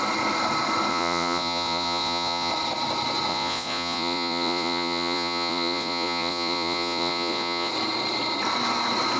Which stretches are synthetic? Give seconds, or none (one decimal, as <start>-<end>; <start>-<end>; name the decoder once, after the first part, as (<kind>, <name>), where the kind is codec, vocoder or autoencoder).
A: 0.9-2.5 (vocoder, Vocos); 3.3-7.7